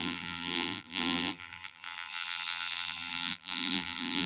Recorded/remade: remade